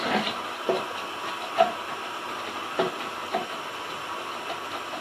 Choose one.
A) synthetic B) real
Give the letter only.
B